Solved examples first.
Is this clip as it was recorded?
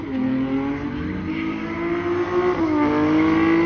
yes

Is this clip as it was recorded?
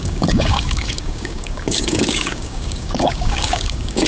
no